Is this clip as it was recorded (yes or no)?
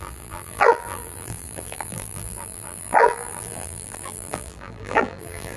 no